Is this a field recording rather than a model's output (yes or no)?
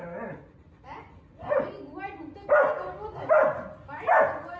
yes